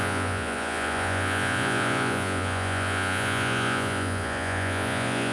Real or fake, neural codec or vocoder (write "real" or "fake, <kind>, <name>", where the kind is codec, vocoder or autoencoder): fake, vocoder, Vocos